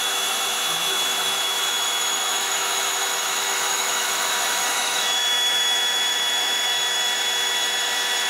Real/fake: fake